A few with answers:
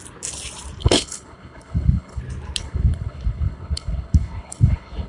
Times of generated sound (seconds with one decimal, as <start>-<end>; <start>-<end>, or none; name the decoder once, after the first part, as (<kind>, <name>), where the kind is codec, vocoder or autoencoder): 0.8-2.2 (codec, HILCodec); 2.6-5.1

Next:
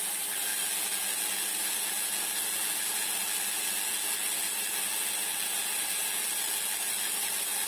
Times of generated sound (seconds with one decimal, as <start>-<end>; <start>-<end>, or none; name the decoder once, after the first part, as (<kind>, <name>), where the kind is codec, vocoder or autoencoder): none

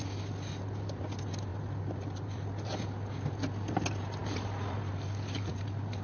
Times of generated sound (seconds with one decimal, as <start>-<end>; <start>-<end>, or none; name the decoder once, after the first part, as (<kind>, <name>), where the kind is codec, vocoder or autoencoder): 1.5-2.4 (vocoder, BigVGAN v2); 4.2-5.5